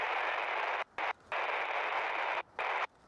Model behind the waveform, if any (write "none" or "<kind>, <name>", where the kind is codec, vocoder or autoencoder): none